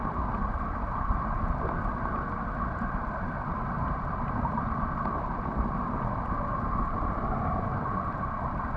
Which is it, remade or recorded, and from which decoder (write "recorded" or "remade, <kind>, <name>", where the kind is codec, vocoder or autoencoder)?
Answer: recorded